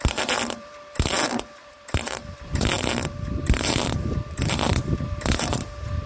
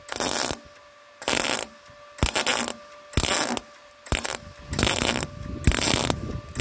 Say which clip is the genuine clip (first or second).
second